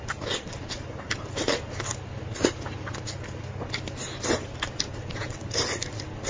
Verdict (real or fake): real